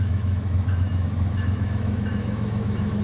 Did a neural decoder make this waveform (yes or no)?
yes